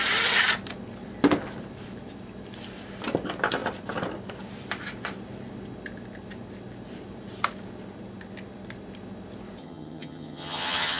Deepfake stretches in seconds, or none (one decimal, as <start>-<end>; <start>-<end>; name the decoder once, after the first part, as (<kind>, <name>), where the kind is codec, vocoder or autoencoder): 9.6-11.0 (vocoder, HiFi-GAN)